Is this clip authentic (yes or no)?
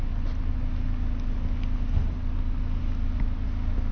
yes